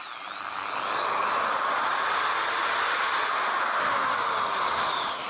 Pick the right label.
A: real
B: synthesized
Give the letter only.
A